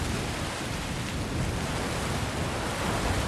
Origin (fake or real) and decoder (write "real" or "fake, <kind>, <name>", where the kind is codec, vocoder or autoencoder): real